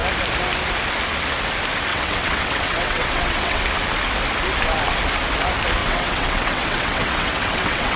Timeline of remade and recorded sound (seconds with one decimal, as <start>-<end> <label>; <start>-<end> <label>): 0.0-1.9 recorded; 1.9-3.6 remade; 3.6-5.8 recorded; 5.8-8.0 remade